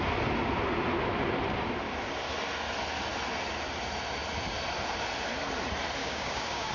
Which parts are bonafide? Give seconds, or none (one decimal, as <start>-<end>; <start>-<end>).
0.0-6.0